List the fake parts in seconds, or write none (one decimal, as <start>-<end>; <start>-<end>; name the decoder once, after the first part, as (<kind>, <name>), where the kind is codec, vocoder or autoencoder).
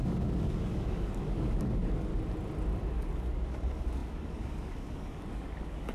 0.0-2.1 (codec, DAC); 2.9-5.9